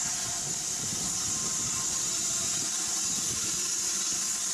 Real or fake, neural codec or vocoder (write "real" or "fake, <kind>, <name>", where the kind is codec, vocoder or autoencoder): real